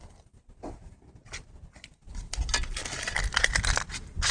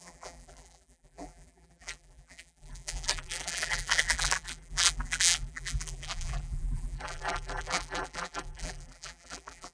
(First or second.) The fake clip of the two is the second